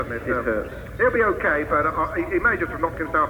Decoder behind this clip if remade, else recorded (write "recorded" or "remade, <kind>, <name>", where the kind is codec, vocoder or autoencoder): recorded